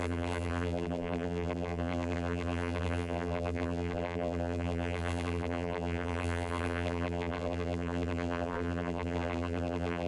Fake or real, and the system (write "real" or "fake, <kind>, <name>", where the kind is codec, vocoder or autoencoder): fake, vocoder, BigVGAN v2